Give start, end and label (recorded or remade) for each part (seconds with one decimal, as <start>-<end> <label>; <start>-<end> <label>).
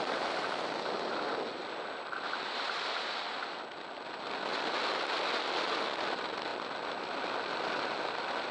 0.0-8.5 recorded